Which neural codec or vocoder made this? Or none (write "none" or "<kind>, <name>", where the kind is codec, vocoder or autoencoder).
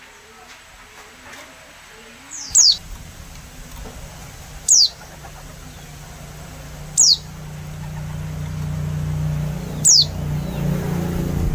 none